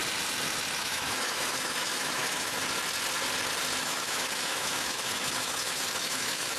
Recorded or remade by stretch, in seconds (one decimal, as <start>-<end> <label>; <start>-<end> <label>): 0.0-0.8 recorded; 0.8-2.6 remade; 2.6-3.8 recorded; 3.8-6.6 remade